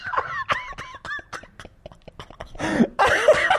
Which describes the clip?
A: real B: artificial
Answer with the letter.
A